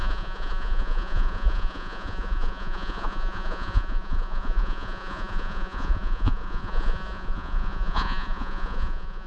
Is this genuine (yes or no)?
no